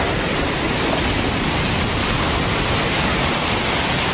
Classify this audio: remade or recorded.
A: recorded